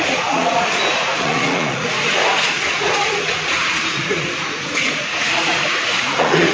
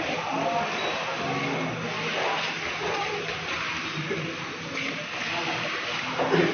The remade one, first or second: first